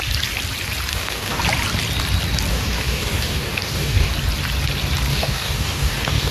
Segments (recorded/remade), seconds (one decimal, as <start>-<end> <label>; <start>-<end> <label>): 0.0-0.9 recorded; 0.9-1.4 remade; 1.4-2.5 recorded; 2.5-4.1 remade; 4.1-5.1 recorded; 5.1-6.3 remade